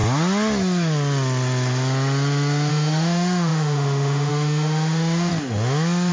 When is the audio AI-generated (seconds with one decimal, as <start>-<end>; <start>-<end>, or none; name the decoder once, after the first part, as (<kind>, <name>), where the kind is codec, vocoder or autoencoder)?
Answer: 2.7-5.3 (autoencoder, DAC-VAE)